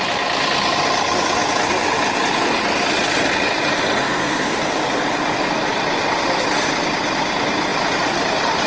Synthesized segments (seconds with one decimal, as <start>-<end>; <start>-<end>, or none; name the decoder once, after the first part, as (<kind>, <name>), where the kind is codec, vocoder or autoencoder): 4.0-4.6 (codec, SNAC)